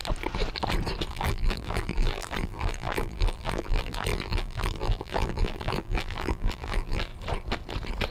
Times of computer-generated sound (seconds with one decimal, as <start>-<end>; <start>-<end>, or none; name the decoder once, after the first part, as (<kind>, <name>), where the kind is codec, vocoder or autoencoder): 1.1-7.1 (vocoder, BigVGAN v2)